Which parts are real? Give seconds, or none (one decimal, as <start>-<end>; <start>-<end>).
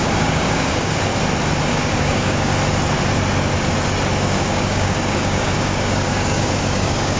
1.1-1.7; 2.5-4.2